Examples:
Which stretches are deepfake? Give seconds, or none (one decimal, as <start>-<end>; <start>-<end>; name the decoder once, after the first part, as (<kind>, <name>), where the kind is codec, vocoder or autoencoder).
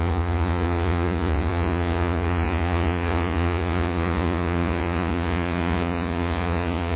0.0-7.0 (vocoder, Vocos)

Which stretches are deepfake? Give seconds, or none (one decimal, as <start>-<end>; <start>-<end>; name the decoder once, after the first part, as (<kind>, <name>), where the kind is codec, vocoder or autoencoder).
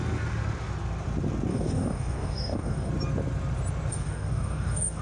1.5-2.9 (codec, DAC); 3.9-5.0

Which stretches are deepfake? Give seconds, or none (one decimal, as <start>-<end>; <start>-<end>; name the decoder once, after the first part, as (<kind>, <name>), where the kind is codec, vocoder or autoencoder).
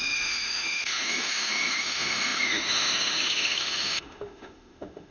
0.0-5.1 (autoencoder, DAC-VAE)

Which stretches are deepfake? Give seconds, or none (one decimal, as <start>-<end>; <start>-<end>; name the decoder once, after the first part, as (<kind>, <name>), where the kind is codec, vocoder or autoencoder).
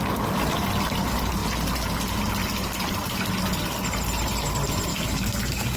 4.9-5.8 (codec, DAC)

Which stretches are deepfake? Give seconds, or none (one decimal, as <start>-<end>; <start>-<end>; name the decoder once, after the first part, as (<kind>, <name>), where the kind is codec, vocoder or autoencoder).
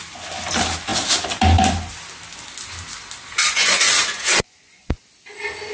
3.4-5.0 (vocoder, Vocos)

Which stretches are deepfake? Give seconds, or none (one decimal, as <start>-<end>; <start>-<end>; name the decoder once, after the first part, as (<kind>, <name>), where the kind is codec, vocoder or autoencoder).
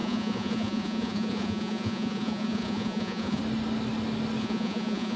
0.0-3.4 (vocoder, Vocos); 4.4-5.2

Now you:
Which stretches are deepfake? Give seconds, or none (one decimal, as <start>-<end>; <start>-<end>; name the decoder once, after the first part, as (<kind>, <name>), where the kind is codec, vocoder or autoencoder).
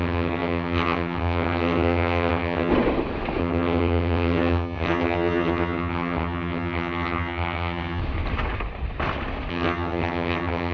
0.0-2.7 (vocoder, HiFi-GAN); 3.4-8.0; 9.5-10.7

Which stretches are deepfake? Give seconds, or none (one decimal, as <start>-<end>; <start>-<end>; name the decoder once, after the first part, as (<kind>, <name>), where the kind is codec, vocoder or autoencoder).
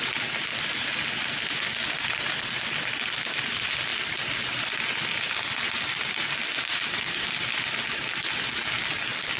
none